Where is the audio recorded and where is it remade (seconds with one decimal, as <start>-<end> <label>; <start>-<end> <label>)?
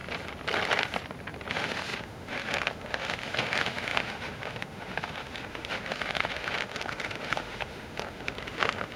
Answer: 0.0-1.5 recorded; 1.5-9.0 remade